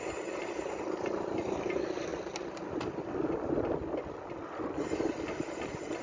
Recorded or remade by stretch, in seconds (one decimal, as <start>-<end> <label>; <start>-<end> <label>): 0.0-6.0 recorded